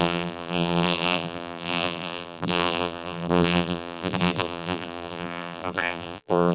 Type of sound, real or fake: fake